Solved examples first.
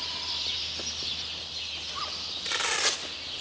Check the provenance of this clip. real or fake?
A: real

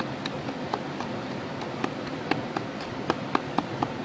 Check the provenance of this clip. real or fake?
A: real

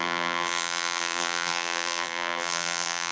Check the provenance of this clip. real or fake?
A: fake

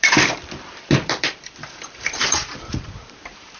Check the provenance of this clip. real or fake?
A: fake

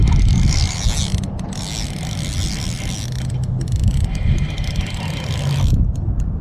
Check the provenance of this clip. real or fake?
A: real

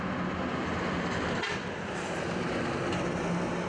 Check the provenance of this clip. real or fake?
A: real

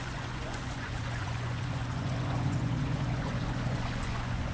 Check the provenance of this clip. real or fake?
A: fake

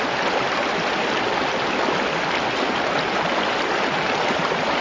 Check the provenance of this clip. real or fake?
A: real